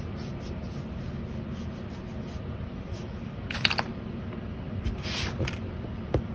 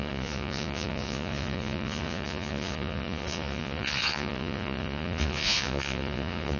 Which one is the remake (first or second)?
second